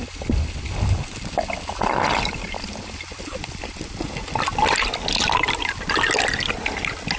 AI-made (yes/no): no